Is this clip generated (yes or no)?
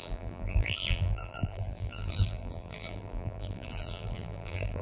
yes